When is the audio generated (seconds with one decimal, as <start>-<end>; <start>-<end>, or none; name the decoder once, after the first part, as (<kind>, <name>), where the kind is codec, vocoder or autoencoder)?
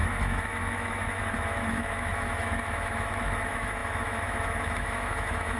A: 0.0-5.6 (autoencoder, DAC-VAE)